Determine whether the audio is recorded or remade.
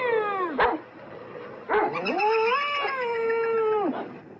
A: recorded